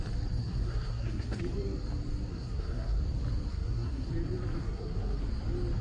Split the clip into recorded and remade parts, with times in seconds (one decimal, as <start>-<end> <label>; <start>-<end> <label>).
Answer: 0.0-0.4 recorded; 0.4-1.4 remade; 1.4-2.3 recorded; 2.3-3.0 remade; 3.0-3.5 recorded; 3.5-4.1 remade; 4.1-4.6 recorded; 4.6-5.2 remade; 5.2-5.8 recorded